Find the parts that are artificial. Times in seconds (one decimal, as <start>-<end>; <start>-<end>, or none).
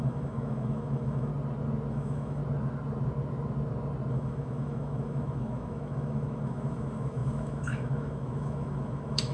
0.0-1.3; 1.9-2.4; 4.1-9.3